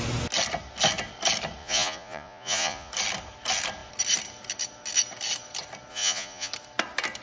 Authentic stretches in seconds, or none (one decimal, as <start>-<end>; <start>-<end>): 0.0-1.6; 2.9-5.9; 6.5-7.2

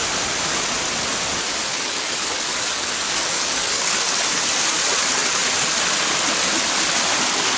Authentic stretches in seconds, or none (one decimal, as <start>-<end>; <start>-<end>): 0.0-1.7; 4.0-7.6

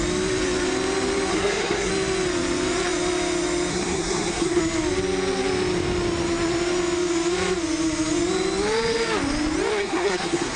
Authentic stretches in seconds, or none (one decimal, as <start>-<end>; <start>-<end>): 0.0-1.3; 1.9-3.7; 4.6-9.8

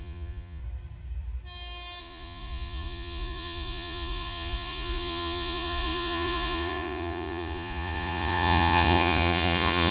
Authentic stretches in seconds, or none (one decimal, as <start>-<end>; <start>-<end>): 0.6-2.0

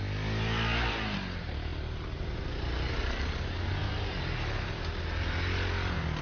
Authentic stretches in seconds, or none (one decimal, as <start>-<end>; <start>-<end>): 0.0-6.2

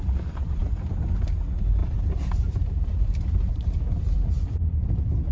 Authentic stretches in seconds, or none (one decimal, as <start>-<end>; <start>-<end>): 0.0-1.8; 3.8-5.3

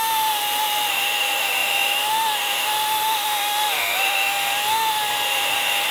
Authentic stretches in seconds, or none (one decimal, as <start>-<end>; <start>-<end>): 0.4-0.9

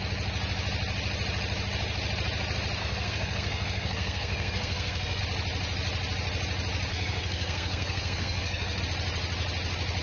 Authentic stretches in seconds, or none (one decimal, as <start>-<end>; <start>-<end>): 0.0-2.8; 5.2-6.9; 8.8-10.0